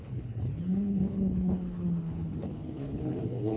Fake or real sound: fake